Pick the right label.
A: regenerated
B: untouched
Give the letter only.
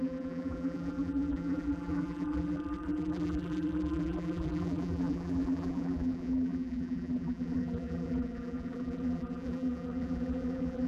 A